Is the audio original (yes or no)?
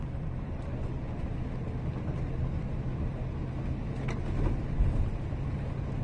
yes